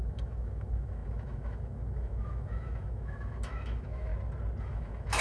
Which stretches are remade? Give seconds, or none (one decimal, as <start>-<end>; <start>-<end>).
0.0-4.1; 4.6-5.2